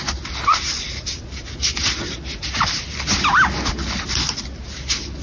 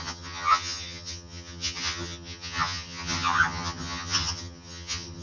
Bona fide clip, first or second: first